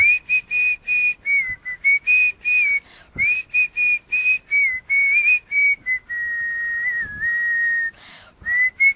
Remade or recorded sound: recorded